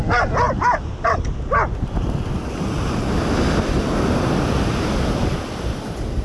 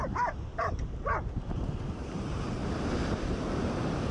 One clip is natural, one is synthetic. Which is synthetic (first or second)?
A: second